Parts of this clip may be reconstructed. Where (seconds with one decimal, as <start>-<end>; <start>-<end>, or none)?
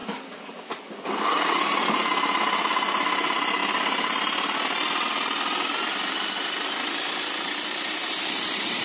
none